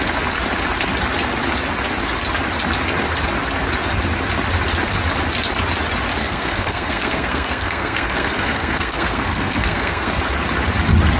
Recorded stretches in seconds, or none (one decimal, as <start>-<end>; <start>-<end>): 0.0-6.2; 10.2-11.2